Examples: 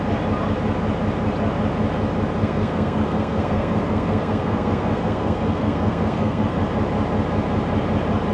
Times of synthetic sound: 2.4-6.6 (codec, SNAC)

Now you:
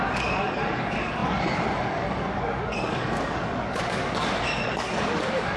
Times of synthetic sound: 0.0-5.6 (codec, DAC)

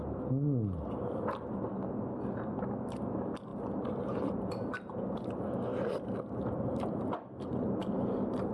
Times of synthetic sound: none

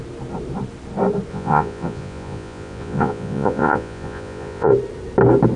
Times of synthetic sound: 1.3-4.7 (vocoder, Vocos)